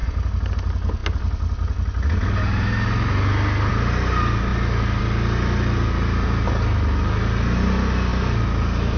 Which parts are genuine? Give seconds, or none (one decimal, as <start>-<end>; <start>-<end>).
0.0-9.0